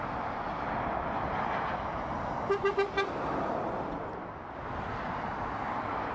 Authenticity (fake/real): real